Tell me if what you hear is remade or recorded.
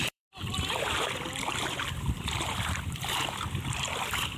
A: remade